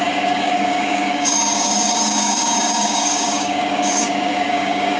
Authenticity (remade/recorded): remade